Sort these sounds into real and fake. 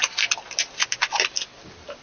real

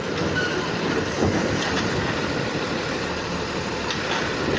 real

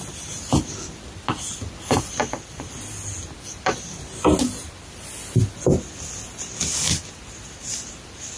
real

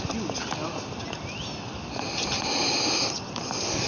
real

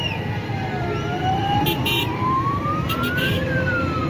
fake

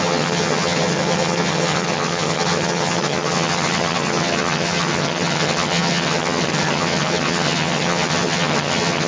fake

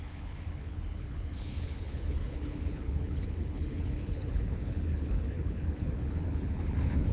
fake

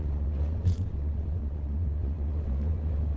fake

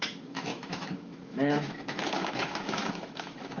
fake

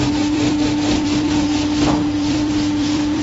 fake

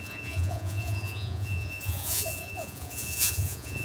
fake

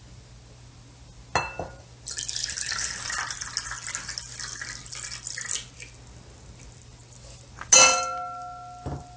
real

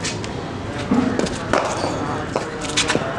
real